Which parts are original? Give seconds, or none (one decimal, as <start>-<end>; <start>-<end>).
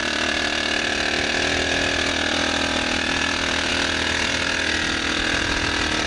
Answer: 0.0-6.1